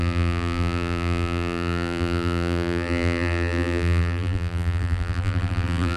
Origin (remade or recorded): remade